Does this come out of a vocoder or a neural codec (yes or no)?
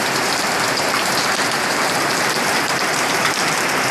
yes